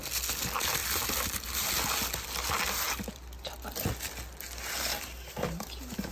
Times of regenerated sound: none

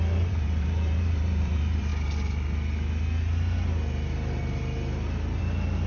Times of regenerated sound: 0.0-1.9 (vocoder, BigVGAN v2); 5.4-5.9

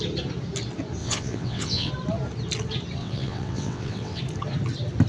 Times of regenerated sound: 1.0-1.9 (vocoder, WaveNeXt); 3.0-4.2

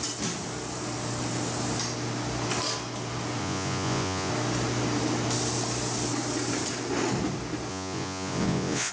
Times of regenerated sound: 3.4-4.3 (vocoder, Vocos); 7.7-8.9

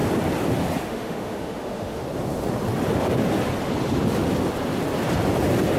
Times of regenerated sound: 0.8-2.0 (autoencoder, DAC-VAE)